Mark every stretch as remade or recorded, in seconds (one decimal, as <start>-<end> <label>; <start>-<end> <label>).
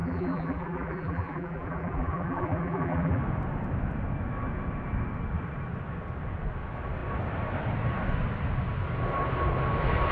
0.0-3.2 remade; 3.2-10.1 recorded